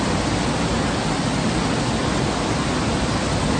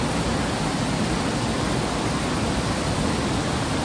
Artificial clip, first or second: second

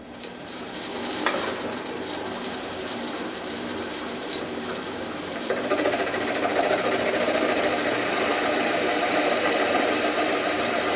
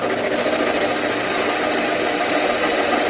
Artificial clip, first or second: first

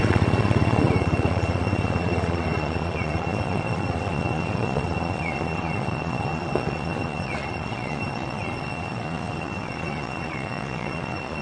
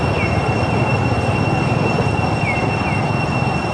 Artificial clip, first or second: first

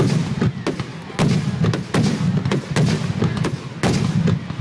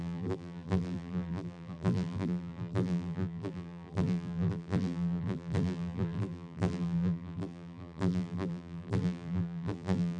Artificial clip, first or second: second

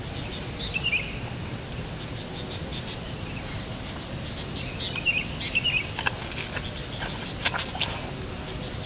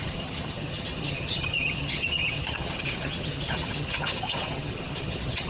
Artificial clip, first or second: second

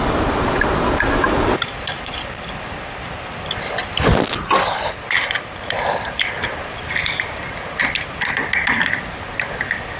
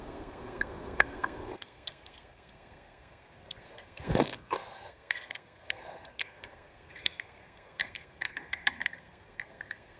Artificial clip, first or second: second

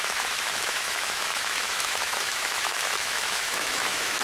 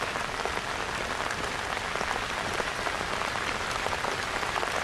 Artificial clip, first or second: first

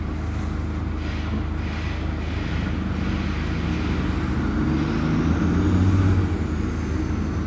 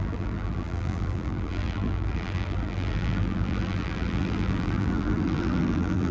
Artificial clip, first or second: second